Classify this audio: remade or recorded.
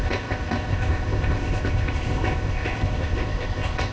remade